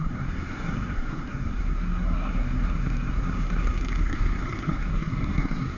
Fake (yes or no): yes